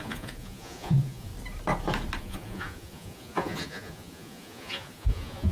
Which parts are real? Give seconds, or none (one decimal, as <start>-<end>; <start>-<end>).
1.3-2.2